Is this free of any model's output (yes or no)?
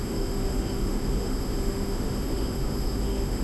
no